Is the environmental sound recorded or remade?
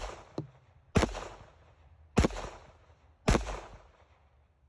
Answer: recorded